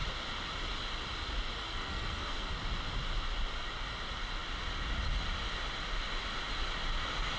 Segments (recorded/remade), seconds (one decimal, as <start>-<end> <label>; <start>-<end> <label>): 0.0-1.6 recorded; 1.6-2.5 remade; 2.5-7.4 recorded